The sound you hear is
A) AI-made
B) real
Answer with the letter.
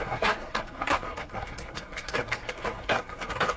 A